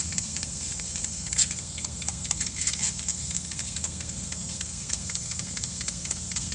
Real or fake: fake